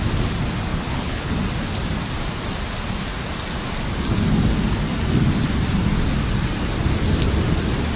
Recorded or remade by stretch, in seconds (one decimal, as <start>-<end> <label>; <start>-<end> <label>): 0.0-0.7 recorded; 0.7-1.3 remade; 1.3-8.0 recorded